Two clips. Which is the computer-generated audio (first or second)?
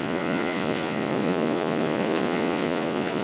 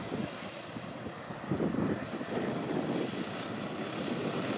first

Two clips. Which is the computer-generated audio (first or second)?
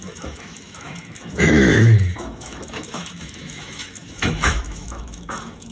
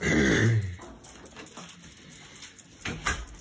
first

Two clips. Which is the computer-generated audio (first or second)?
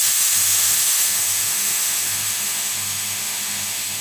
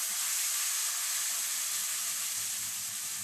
first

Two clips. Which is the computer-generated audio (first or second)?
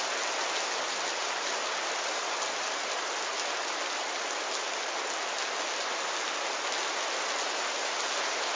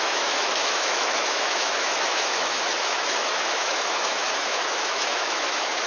second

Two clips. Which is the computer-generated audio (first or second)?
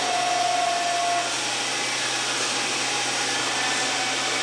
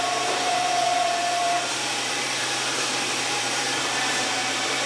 second